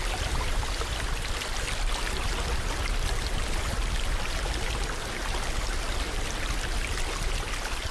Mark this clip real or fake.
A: real